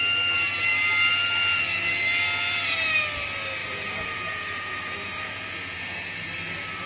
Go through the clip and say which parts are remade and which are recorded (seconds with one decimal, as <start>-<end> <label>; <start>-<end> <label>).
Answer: 0.0-3.6 recorded; 3.6-6.3 remade; 6.3-6.9 recorded